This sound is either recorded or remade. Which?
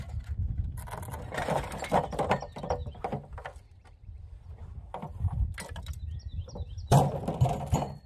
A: recorded